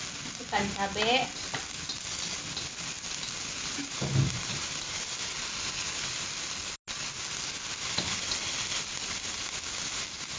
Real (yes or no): yes